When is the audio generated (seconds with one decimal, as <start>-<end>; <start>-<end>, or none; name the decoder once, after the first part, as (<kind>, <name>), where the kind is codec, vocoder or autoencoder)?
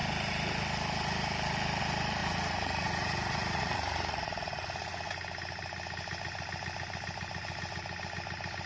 2.2-5.1 (vocoder, Vocos)